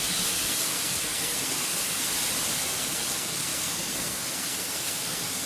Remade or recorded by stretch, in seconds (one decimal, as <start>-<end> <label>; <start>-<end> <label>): 0.0-2.1 remade; 2.1-2.6 recorded; 2.6-5.5 remade